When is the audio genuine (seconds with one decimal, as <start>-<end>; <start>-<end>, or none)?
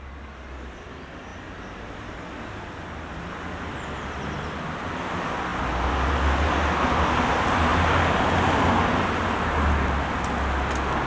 0.0-11.1